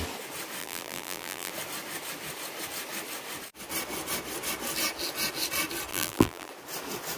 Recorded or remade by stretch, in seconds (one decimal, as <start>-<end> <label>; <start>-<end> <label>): 0.0-0.6 recorded; 0.6-1.5 remade; 1.5-5.9 recorded; 5.9-6.5 remade; 6.5-7.2 recorded